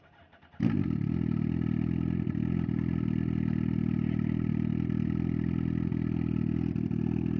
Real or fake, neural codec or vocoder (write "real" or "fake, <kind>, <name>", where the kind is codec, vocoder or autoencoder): real